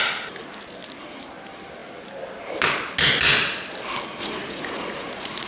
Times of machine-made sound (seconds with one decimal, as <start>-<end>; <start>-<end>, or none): 4.2-5.5